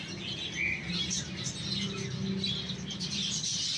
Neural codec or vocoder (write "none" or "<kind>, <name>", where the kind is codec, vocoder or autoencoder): none